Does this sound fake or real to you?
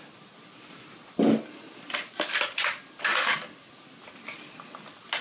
real